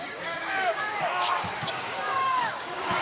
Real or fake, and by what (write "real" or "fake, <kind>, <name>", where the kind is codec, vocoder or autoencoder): fake, codec, DAC